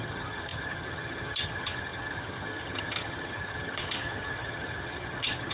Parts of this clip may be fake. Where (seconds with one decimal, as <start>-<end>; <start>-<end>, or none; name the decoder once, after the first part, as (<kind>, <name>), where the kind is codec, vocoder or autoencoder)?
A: 0.0-5.5 (vocoder, HiFi-GAN)